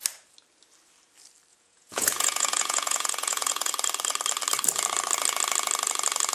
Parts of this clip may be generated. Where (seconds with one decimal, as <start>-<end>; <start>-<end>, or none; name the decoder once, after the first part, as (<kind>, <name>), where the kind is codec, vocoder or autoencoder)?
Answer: 1.5-3.7 (vocoder, Vocos)